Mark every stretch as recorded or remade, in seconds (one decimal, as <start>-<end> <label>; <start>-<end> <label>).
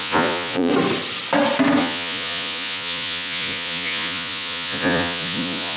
0.0-0.7 remade; 0.7-1.8 recorded; 1.8-5.8 remade